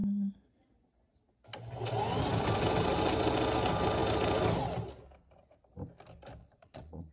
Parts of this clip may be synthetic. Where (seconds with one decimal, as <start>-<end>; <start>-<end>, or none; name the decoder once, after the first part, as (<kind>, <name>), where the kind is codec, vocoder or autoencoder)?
6.4-7.1 (vocoder, Vocos)